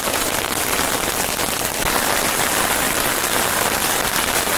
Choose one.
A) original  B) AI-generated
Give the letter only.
A